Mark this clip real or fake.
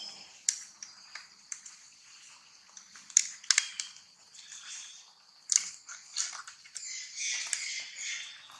real